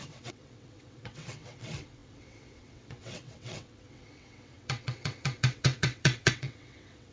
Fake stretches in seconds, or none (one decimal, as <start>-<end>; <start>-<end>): 0.0-7.1